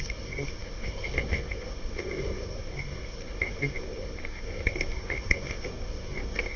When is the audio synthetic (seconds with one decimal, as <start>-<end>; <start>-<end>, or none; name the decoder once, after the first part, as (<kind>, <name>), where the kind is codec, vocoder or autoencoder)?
0.0-6.6 (codec, SNAC)